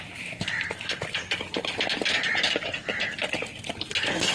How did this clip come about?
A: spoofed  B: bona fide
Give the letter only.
B